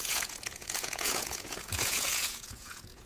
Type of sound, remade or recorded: remade